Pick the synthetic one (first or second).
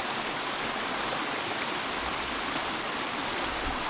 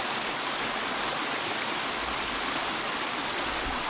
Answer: first